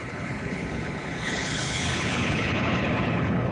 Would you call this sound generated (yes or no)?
yes